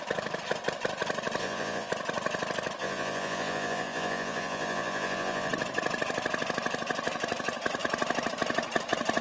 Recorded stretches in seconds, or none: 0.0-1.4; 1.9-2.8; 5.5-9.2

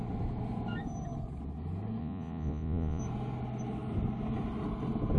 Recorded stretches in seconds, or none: 0.0-2.0; 3.0-5.2